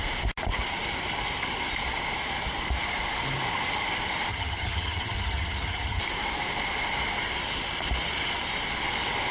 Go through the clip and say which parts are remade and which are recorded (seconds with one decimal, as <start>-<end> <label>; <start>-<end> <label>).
0.0-4.3 recorded; 4.3-6.0 remade; 6.0-9.3 recorded